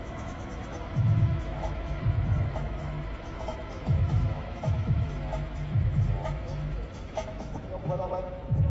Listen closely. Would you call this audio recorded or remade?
remade